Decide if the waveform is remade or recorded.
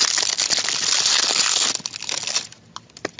recorded